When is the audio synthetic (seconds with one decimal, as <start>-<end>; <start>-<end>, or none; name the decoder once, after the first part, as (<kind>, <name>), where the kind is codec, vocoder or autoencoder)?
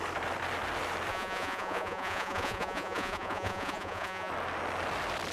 1.1-4.3 (vocoder, Vocos)